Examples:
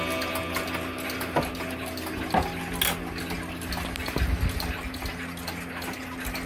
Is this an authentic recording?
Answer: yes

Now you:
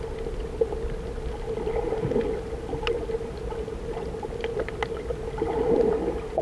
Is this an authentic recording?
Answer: yes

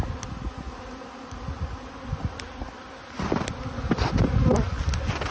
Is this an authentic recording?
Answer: yes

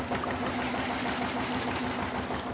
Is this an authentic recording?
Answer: yes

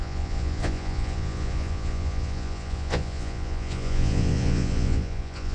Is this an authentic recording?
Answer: no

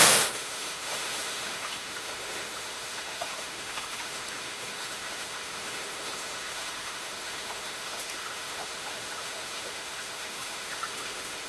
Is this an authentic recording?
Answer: no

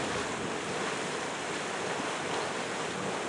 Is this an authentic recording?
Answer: yes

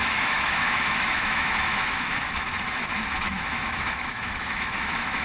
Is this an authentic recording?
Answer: no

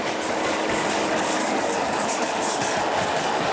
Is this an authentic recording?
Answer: no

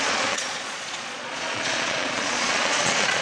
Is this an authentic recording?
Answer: no